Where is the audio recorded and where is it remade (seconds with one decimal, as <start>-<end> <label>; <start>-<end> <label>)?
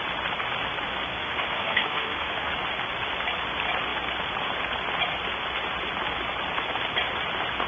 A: 0.0-1.2 recorded; 1.2-2.5 remade; 2.5-7.7 recorded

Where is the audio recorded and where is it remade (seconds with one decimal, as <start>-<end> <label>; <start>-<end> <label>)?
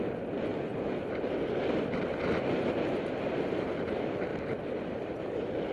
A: 0.0-5.7 recorded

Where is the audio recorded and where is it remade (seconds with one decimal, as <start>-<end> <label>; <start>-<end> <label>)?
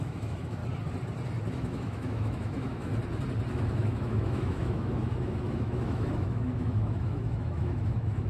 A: 0.0-0.6 remade; 0.6-1.5 recorded; 1.5-2.9 remade; 2.9-3.5 recorded; 3.5-8.3 remade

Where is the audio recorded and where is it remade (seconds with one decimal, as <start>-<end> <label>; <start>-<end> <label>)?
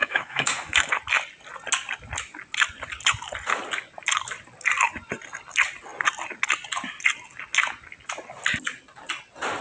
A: 0.0-0.9 remade; 0.9-9.6 recorded